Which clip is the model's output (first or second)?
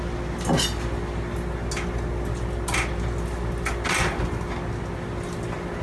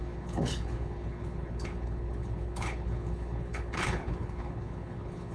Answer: second